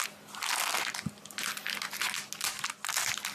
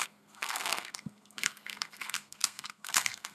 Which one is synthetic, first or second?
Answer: second